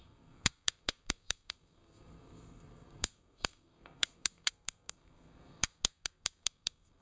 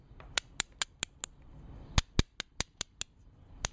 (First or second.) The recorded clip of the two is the second